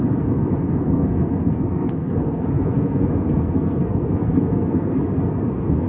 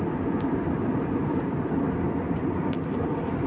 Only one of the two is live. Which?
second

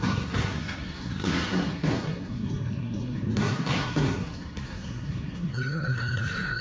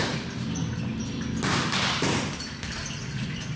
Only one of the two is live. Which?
second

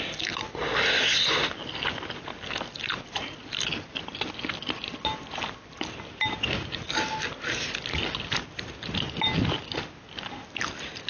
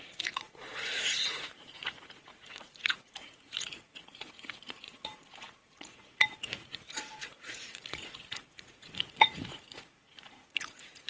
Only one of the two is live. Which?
first